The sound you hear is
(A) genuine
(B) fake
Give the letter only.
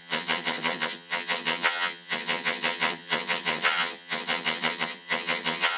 B